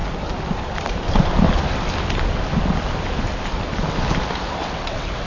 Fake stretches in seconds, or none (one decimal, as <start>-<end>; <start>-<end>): 4.6-5.3